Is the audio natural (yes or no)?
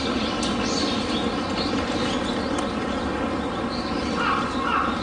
yes